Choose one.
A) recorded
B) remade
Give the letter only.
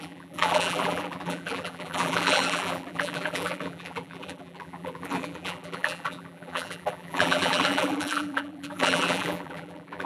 B